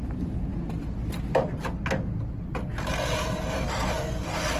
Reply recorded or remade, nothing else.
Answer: recorded